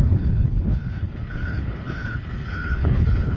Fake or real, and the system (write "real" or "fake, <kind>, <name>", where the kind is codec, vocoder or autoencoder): fake, codec, HILCodec